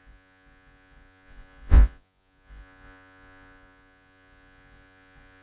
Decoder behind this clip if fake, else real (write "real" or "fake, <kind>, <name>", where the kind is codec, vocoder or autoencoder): fake, vocoder, Vocos